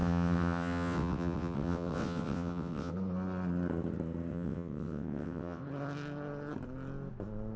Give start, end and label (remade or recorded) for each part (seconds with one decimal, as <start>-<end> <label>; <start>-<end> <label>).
0.0-2.9 remade; 2.9-4.3 recorded; 4.3-5.6 remade; 5.6-7.6 recorded